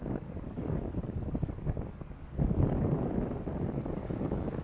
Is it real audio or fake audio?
fake